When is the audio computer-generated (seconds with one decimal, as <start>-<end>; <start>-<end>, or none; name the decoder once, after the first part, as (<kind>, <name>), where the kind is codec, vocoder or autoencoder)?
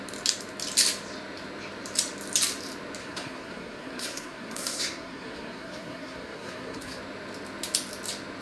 3.0-7.0 (codec, SNAC)